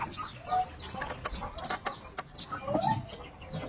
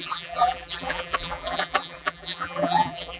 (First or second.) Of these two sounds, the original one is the first